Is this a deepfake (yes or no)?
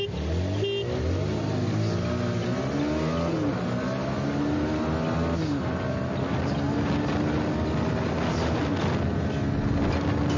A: no